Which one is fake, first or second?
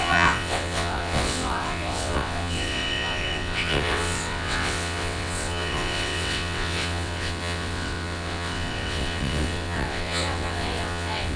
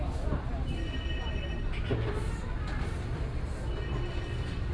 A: first